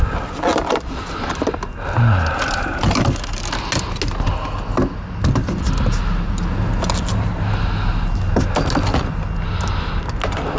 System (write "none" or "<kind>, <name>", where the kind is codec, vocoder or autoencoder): none